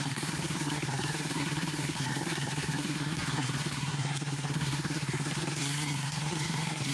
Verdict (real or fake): fake